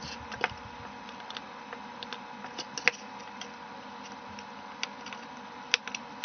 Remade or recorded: recorded